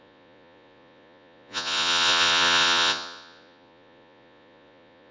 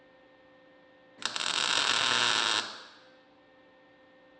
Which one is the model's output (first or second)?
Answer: first